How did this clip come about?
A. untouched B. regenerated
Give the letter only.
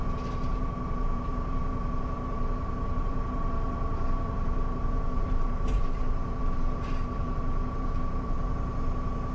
B